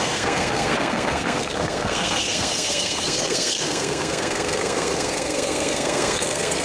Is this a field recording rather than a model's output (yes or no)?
no